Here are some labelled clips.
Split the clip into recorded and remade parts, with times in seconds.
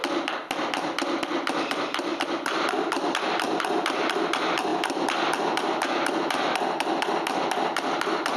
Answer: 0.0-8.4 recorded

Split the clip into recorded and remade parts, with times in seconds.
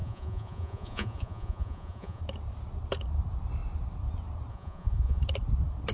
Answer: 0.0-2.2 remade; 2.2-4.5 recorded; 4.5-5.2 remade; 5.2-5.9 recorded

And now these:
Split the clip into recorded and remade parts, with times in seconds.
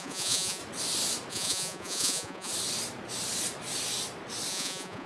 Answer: 0.0-0.6 remade; 0.6-1.3 recorded; 1.3-2.5 remade; 2.5-4.5 recorded; 4.5-5.1 remade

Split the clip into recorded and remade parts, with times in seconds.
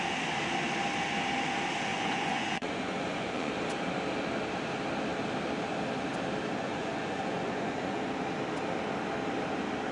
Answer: 0.0-1.9 recorded; 1.9-3.5 remade; 3.5-6.6 recorded; 6.6-8.1 remade; 8.1-9.9 recorded